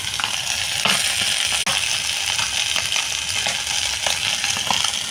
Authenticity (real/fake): real